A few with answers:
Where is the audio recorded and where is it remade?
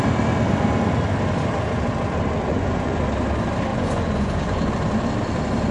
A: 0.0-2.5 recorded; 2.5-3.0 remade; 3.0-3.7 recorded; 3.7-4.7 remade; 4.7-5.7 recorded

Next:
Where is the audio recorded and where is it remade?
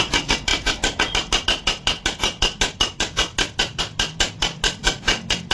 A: 0.0-5.5 recorded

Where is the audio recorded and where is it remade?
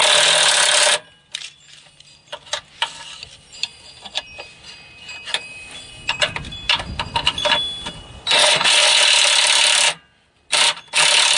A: 0.0-8.4 recorded; 8.4-9.0 remade; 9.0-11.4 recorded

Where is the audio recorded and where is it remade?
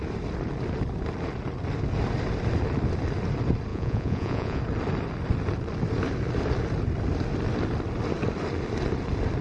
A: 0.0-3.7 recorded; 3.7-4.6 remade; 4.6-9.4 recorded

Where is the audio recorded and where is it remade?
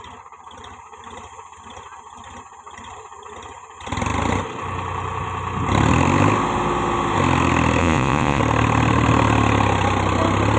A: 0.0-7.8 recorded; 7.8-8.4 remade; 8.4-10.6 recorded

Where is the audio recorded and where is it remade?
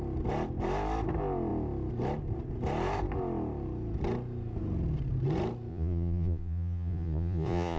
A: 0.0-5.7 recorded; 5.7-7.8 remade